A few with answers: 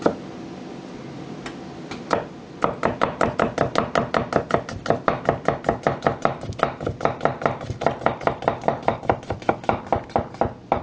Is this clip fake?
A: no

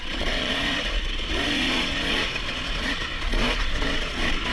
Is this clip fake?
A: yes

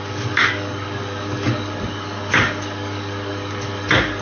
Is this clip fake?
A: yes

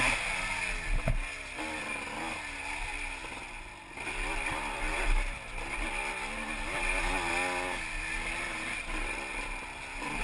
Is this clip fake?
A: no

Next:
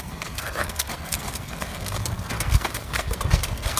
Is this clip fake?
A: yes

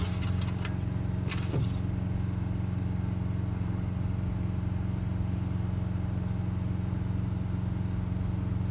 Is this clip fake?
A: no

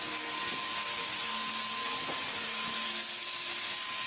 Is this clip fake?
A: no